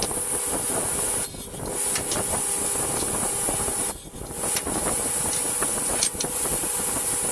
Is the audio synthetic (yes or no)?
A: no